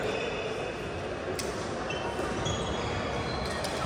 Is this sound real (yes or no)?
yes